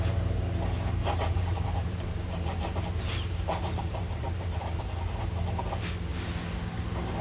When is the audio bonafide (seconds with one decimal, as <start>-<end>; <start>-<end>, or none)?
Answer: 0.0-1.0; 4.8-7.2